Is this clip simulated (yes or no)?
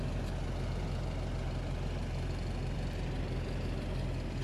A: no